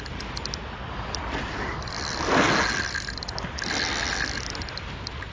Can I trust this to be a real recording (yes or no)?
yes